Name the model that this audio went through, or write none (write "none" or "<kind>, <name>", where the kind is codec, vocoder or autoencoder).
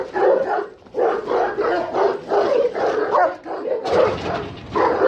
none